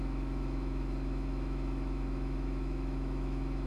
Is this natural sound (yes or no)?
no